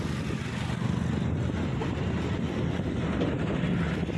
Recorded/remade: recorded